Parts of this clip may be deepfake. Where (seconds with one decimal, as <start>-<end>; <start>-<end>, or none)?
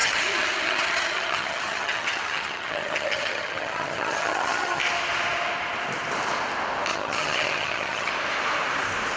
0.0-4.8; 6.9-8.1